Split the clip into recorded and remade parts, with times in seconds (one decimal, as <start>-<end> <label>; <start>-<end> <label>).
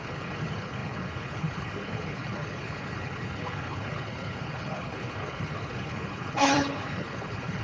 0.0-7.6 remade